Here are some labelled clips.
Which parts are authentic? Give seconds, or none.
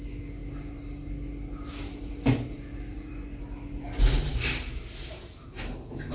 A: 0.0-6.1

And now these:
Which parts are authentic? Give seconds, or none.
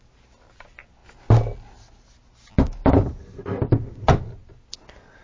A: 0.0-5.2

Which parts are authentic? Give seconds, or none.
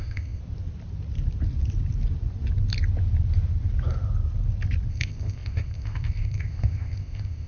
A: 0.4-4.9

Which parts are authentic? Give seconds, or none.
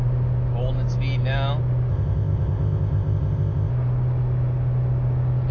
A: 0.0-1.9; 3.7-5.5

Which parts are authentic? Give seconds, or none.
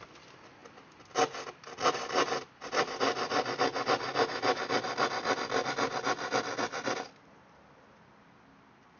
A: 0.0-9.0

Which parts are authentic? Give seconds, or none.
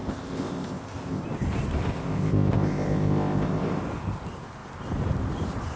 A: 1.2-1.8; 3.8-5.8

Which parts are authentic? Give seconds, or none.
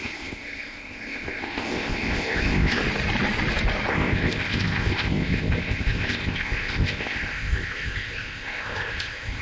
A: 2.8-3.9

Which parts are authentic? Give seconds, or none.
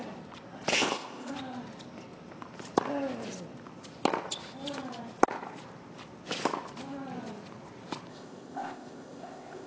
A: 0.0-0.7; 1.3-8.1